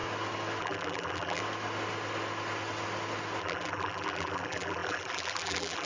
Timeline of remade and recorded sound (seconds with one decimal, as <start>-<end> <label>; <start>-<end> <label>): 0.0-0.6 recorded; 0.6-1.4 remade; 1.4-3.4 recorded; 3.4-5.9 remade